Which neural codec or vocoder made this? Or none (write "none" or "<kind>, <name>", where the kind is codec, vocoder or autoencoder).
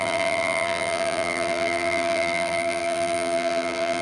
vocoder, BigVGAN v2